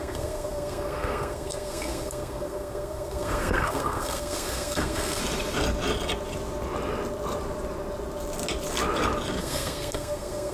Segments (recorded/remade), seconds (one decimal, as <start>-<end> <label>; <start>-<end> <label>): 0.0-5.2 remade; 5.2-9.4 recorded; 9.4-10.5 remade